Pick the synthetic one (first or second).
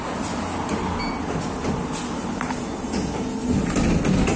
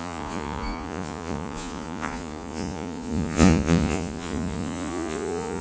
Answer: second